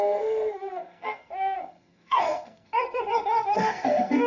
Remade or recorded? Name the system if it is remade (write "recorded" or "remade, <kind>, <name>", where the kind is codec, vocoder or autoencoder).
remade, codec, SNAC